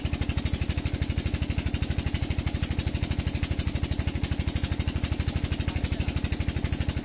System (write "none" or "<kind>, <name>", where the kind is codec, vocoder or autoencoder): none